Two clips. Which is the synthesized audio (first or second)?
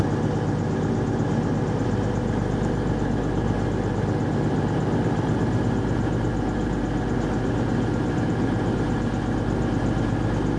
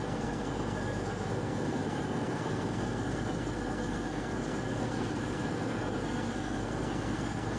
second